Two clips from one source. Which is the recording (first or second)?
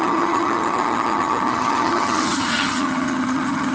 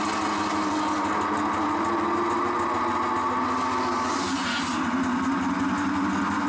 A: second